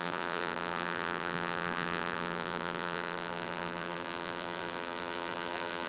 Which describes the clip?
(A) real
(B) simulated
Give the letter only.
B